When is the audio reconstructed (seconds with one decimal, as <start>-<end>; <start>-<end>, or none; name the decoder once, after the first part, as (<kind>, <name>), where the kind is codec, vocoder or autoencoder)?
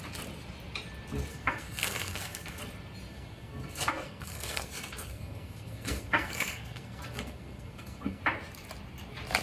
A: 1.3-2.6 (codec, SNAC); 3.1-8.2